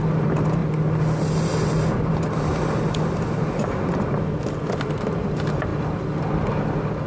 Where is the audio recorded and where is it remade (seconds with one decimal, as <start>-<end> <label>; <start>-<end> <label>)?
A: 0.0-7.1 recorded